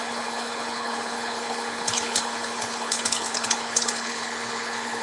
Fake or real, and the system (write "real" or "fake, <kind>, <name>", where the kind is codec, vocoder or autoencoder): fake, codec, HILCodec